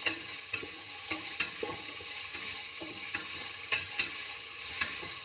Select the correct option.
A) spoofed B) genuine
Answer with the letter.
A